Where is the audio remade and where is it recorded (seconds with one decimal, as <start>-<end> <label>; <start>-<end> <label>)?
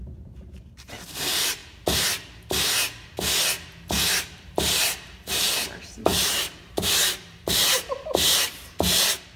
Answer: 0.0-1.6 remade; 1.6-4.2 recorded; 4.2-9.4 remade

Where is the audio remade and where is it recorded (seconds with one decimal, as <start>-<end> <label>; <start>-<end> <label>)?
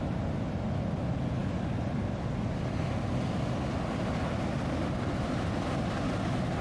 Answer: 0.0-6.6 recorded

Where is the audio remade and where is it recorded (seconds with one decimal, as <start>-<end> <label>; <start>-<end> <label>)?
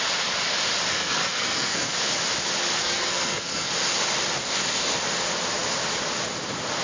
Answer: 0.0-0.9 recorded; 0.9-1.9 remade; 1.9-2.8 recorded; 2.8-3.7 remade; 3.7-6.8 recorded